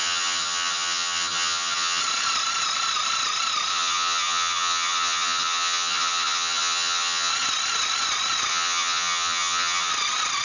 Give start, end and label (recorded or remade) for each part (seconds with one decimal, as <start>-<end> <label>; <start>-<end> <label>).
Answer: 0.0-2.0 remade; 2.0-3.7 recorded; 3.7-7.3 remade; 7.3-8.5 recorded; 8.5-9.9 remade; 9.9-10.4 recorded

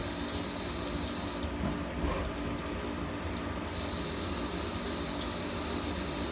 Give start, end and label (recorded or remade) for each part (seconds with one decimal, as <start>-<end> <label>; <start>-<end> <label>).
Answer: 0.0-6.3 recorded

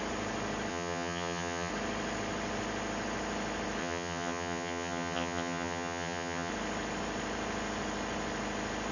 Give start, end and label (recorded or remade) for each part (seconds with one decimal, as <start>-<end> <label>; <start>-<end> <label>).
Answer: 0.0-0.7 recorded; 0.7-1.7 remade; 1.7-3.8 recorded; 3.8-6.5 remade; 6.5-8.9 recorded

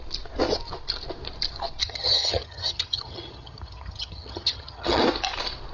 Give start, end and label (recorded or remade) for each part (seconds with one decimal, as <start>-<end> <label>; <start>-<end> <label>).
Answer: 0.0-1.8 recorded; 1.8-5.0 remade; 5.0-5.7 recorded

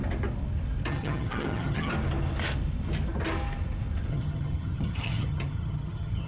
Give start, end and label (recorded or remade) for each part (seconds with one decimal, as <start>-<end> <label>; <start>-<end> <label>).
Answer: 0.0-0.9 recorded; 0.9-1.9 remade; 1.9-4.1 recorded; 4.1-6.3 remade

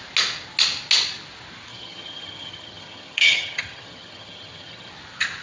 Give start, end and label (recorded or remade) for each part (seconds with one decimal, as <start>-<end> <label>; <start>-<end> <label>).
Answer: 0.0-1.7 recorded; 1.7-4.9 remade; 4.9-5.4 recorded

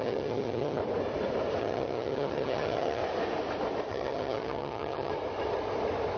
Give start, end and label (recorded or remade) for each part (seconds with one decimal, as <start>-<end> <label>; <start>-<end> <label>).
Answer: 0.0-0.8 remade; 0.8-1.6 recorded; 1.6-3.0 remade; 3.0-3.9 recorded; 3.9-5.1 remade; 5.1-6.2 recorded

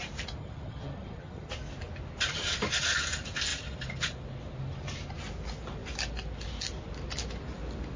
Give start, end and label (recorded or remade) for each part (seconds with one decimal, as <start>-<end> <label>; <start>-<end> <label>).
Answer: 0.0-0.4 recorded; 0.4-1.5 remade; 1.5-8.0 recorded